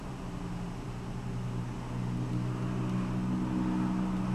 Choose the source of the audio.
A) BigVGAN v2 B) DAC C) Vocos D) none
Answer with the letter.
D